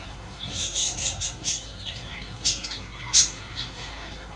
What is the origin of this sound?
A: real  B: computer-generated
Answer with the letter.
B